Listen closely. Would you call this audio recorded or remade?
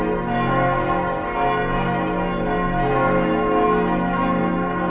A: recorded